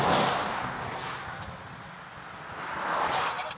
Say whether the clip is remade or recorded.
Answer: recorded